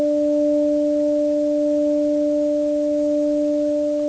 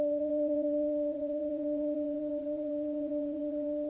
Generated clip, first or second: second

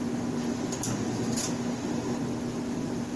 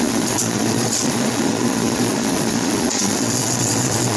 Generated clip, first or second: second